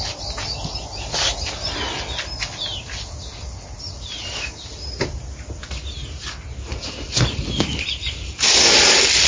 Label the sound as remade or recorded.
recorded